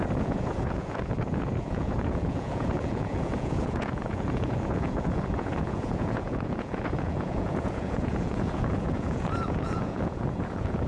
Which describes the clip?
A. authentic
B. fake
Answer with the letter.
B